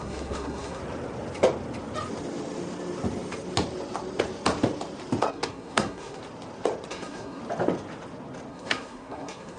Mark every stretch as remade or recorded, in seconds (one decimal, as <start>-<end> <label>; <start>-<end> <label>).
0.0-0.8 remade; 0.8-5.3 recorded; 5.3-6.2 remade; 6.2-6.9 recorded; 6.9-7.4 remade; 7.4-8.5 recorded; 8.5-9.6 remade